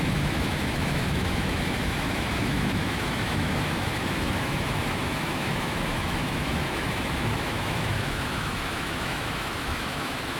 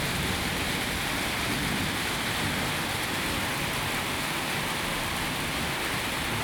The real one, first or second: second